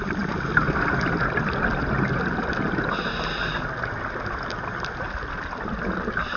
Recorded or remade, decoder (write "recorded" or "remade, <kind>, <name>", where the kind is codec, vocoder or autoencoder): recorded